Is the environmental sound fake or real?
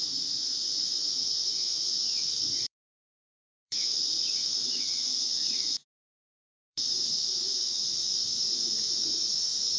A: fake